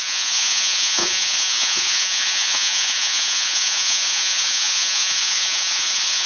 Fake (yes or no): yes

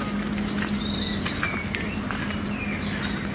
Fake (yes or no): no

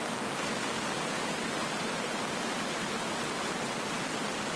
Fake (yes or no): no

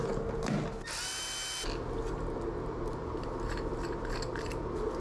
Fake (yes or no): no